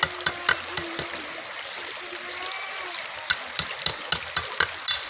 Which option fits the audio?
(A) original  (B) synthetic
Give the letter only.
A